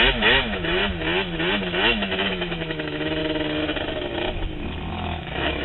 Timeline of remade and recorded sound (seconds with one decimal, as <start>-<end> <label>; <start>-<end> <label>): 0.0-0.8 remade; 0.8-2.3 recorded; 2.3-3.2 remade; 3.2-4.9 recorded; 4.9-5.6 remade